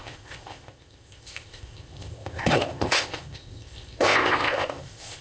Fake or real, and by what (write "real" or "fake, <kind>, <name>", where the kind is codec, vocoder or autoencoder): fake, codec, ZipCodec